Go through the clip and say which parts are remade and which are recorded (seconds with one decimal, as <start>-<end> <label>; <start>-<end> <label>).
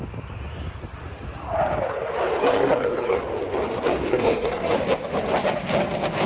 0.0-2.4 recorded; 2.4-3.2 remade; 3.2-4.1 recorded; 4.1-4.8 remade; 4.8-6.3 recorded